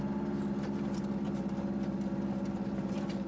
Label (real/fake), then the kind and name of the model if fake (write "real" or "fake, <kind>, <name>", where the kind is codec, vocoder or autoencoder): real